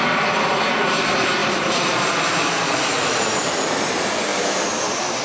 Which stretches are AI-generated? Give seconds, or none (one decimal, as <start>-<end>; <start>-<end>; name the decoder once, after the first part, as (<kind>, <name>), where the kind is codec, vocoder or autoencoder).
1.4-3.3 (vocoder, BigVGAN v2); 4.3-5.2